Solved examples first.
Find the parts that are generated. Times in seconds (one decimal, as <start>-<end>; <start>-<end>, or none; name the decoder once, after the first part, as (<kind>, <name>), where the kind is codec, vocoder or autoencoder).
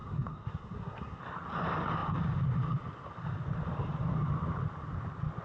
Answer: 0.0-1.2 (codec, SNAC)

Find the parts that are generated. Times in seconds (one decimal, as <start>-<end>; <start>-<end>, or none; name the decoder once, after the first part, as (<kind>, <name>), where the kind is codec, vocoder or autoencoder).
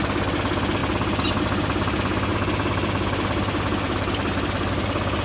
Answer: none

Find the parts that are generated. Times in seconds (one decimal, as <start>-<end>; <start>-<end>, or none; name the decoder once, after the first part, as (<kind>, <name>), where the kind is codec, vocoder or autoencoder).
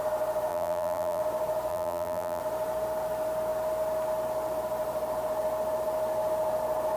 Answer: 0.5-1.2 (vocoder, BigVGAN v2); 1.7-2.4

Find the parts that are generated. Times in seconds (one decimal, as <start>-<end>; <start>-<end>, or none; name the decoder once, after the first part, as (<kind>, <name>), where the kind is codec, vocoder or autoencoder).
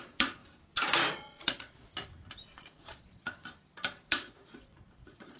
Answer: 0.0-0.4 (vocoder, Vocos); 1.1-1.9; 2.5-3.4; 4.1-5.4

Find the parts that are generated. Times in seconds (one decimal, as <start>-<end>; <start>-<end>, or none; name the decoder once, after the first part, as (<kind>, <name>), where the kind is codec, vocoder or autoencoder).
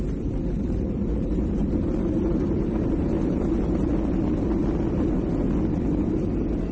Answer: 0.0-3.9 (vocoder, BigVGAN v2)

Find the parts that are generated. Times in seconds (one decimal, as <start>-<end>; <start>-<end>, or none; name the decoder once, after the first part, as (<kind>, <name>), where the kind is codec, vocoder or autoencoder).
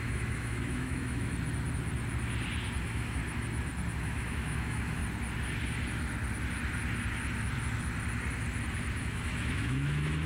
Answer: 0.0-1.3 (autoencoder, DAC-VAE); 2.8-3.2; 3.9-5.0; 9.0-10.3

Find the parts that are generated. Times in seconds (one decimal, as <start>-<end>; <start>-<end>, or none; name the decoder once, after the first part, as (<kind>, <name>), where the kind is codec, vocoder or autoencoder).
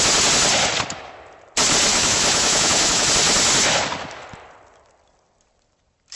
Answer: 1.9-3.1 (autoencoder, DAC-VAE)